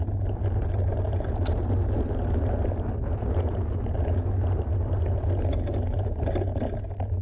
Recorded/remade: recorded